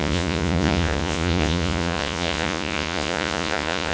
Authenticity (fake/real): fake